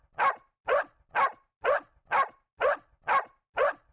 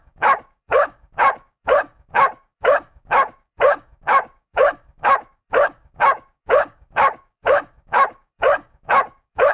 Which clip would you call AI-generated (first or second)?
second